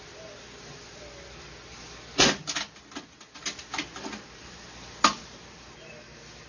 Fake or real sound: real